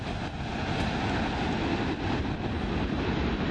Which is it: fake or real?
real